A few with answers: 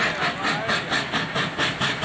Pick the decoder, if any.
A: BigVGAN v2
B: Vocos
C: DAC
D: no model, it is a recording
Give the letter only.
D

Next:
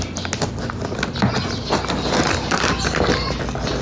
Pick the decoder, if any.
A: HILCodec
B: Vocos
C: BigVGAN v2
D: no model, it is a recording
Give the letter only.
D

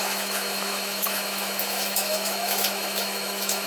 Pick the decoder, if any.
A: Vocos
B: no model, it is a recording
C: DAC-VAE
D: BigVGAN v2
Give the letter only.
C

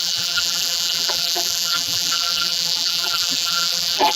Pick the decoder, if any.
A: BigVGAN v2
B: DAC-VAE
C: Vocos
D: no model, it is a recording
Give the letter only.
A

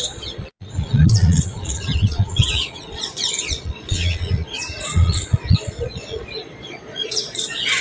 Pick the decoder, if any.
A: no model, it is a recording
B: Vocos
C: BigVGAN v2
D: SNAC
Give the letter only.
B